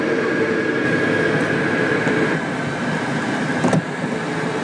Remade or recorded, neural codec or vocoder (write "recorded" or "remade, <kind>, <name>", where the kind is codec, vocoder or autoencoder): recorded